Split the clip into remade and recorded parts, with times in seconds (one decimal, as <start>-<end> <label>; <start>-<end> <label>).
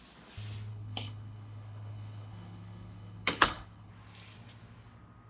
0.0-0.7 recorded; 0.7-3.9 remade; 3.9-5.3 recorded